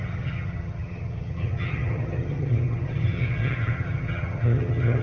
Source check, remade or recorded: remade